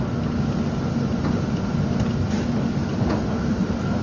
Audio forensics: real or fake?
real